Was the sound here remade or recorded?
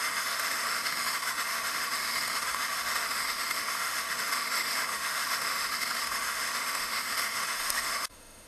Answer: remade